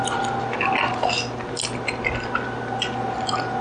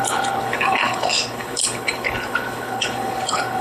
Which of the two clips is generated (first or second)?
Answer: second